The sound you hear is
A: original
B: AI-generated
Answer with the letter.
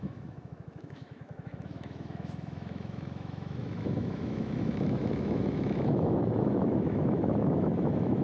B